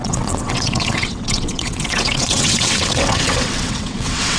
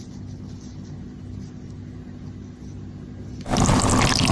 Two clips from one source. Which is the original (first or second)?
second